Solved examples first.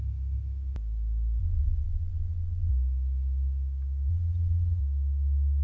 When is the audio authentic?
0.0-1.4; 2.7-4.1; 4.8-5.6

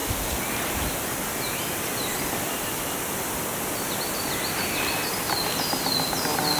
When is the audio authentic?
0.0-6.6